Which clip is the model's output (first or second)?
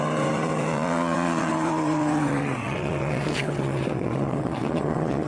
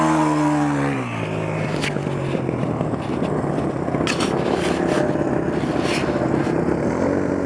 first